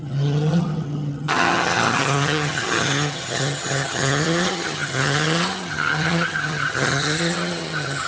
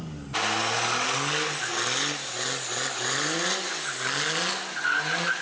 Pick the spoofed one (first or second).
first